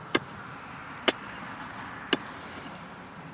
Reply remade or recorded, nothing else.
recorded